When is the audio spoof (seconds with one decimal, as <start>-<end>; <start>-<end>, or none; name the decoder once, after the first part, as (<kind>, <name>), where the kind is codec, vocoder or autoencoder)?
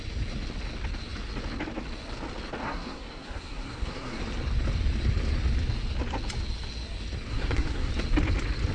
2.6-4.2 (codec, SNAC); 7.3-7.9